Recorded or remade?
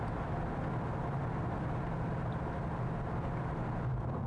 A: recorded